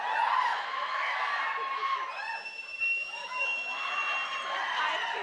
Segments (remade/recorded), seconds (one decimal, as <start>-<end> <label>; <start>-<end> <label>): 0.0-0.5 recorded; 0.5-1.4 remade; 1.4-3.2 recorded; 3.2-4.0 remade; 4.0-5.2 recorded